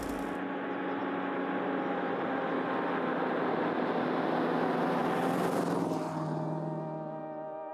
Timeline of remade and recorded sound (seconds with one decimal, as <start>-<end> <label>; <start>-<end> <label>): 0.0-7.7 recorded